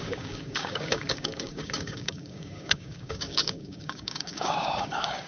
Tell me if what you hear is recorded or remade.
remade